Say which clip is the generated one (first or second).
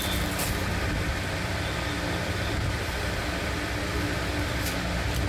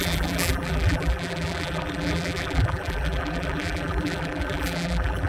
second